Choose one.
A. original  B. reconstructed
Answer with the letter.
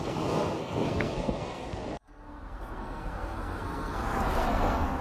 B